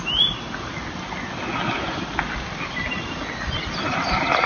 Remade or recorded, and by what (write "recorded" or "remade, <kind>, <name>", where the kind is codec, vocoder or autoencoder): recorded